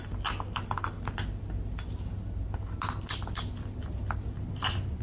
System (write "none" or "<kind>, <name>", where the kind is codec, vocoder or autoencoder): none